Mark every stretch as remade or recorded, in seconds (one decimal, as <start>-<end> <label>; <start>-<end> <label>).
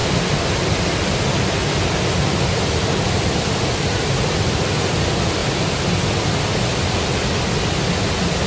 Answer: 0.0-8.5 recorded